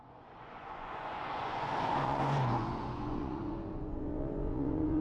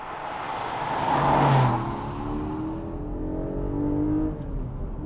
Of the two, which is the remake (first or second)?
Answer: first